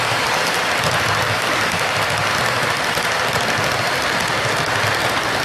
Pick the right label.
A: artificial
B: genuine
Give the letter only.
B